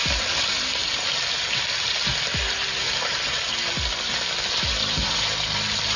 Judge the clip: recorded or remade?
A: recorded